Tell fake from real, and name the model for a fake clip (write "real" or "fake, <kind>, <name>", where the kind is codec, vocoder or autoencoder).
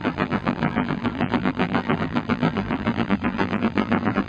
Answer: fake, vocoder, BigVGAN v2